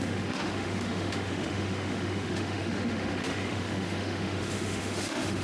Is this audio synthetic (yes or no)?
yes